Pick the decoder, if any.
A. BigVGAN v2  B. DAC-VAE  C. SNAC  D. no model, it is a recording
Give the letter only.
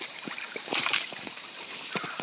A